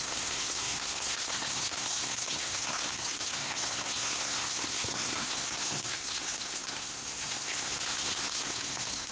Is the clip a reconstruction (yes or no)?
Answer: yes